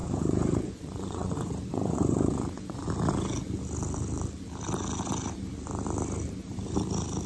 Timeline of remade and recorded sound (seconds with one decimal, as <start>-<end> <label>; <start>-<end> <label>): 0.0-2.8 remade; 2.8-7.3 recorded